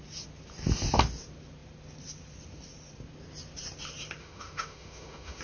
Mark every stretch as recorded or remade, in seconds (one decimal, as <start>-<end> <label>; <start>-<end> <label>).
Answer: 0.0-4.2 recorded; 4.2-5.4 remade